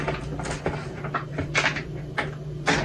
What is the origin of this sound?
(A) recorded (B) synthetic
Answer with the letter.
A